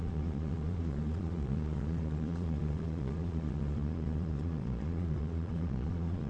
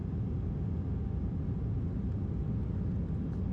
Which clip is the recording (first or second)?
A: second